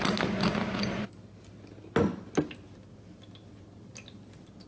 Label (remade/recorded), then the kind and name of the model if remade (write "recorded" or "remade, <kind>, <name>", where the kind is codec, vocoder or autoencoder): recorded